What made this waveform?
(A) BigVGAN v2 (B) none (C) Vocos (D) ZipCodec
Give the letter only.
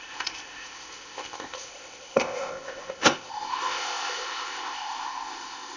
D